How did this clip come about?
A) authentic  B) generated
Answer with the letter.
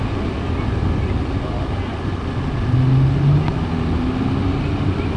A